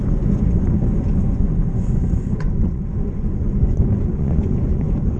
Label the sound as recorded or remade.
remade